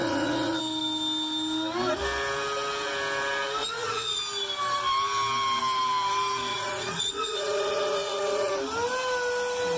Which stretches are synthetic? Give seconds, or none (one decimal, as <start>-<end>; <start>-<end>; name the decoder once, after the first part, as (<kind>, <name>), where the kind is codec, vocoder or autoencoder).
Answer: 0.0-0.6 (vocoder, Vocos); 3.6-4.2; 6.5-8.5